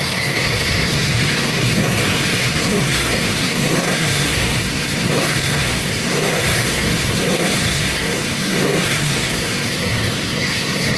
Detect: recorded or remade remade